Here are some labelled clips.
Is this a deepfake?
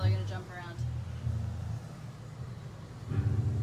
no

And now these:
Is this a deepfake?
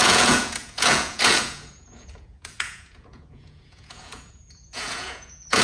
yes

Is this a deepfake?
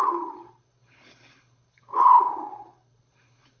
yes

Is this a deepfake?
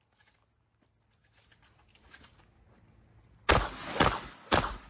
no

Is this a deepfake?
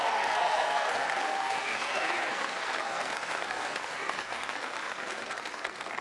yes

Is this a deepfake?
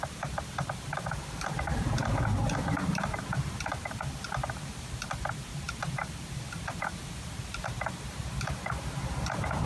yes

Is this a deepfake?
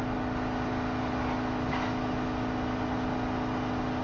no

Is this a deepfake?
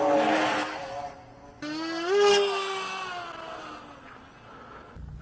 no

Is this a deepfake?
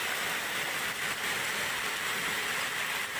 yes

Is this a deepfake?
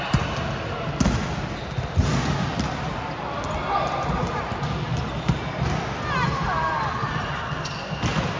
no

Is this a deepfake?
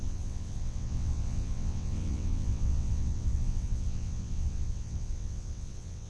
yes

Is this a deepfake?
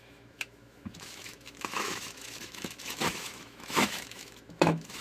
yes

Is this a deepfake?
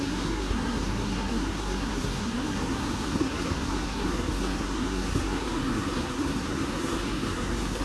yes